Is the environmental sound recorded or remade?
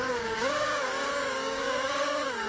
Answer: remade